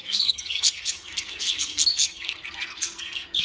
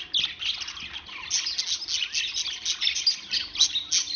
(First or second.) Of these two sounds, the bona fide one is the second